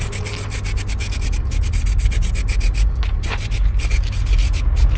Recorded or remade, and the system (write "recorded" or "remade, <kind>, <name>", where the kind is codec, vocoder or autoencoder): recorded